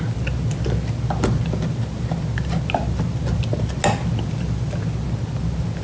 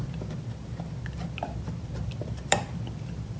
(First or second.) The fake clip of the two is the second